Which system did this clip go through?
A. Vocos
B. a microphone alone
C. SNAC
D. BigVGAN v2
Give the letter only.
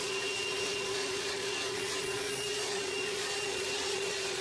A